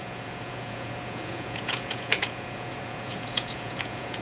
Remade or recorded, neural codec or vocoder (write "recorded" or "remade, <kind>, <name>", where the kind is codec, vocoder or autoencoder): remade, vocoder, Vocos